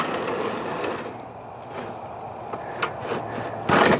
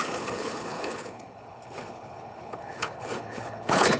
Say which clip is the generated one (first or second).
second